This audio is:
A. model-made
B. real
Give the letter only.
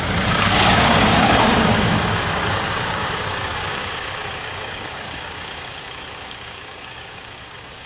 A